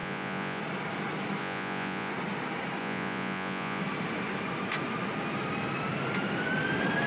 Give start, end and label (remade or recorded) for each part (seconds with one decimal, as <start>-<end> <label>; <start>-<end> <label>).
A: 0.0-0.6 remade; 0.6-1.4 recorded; 1.4-2.1 remade; 2.1-2.8 recorded; 2.8-3.8 remade; 3.8-7.1 recorded